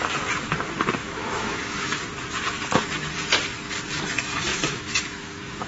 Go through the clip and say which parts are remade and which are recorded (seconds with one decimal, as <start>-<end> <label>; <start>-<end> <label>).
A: 0.0-1.0 recorded; 1.0-2.0 remade; 2.0-4.5 recorded; 4.5-5.7 remade

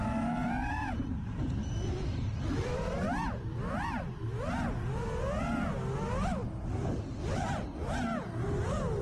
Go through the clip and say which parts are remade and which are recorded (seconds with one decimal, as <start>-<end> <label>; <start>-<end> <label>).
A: 0.0-0.4 recorded; 0.4-3.7 remade; 3.7-9.0 recorded

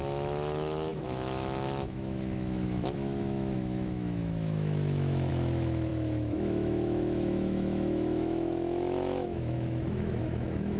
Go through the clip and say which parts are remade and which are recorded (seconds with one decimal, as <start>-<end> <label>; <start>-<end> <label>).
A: 0.0-10.8 remade

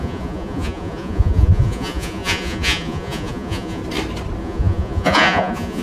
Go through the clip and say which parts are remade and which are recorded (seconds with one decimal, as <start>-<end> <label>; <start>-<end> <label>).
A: 0.0-3.8 remade; 3.8-4.4 recorded; 4.4-5.8 remade

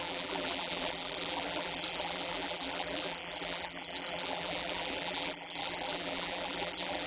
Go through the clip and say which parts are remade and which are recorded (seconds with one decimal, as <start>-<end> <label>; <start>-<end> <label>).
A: 0.0-7.1 remade

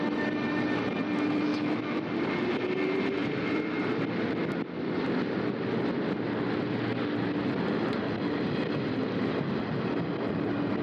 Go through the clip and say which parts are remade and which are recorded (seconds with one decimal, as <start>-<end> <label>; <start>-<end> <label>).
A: 0.0-1.5 recorded; 1.5-2.0 remade; 2.0-10.8 recorded

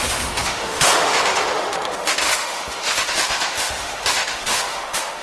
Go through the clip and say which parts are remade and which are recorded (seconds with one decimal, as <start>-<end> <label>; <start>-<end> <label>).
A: 0.0-5.2 remade

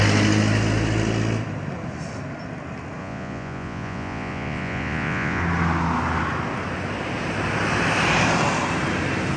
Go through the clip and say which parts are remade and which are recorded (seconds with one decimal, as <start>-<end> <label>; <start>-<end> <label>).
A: 0.0-3.0 recorded; 3.0-5.4 remade; 5.4-9.4 recorded